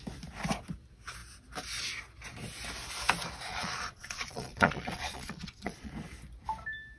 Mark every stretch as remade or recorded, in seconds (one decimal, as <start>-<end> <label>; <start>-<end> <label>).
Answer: 0.0-3.5 recorded; 3.5-5.9 remade; 5.9-7.0 recorded